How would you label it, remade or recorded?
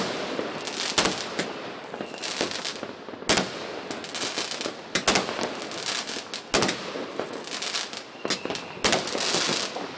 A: recorded